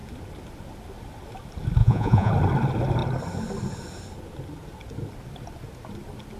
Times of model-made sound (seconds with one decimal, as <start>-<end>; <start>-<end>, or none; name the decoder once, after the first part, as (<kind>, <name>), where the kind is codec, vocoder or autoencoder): 1.8-2.3 (vocoder, Vocos)

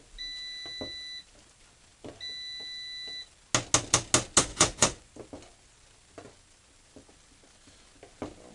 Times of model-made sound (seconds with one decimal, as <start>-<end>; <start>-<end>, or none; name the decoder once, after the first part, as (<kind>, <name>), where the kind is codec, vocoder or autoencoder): 4.5-5.1 (vocoder, Vocos)

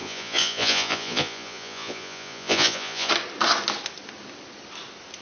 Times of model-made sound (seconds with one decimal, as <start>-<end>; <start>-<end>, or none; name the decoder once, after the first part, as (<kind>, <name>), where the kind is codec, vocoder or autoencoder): 0.0-3.1 (vocoder, Vocos)

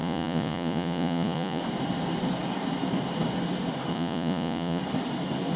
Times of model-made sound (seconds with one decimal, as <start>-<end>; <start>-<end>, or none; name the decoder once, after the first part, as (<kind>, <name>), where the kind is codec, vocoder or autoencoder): 0.0-1.6 (vocoder, Vocos); 3.9-4.8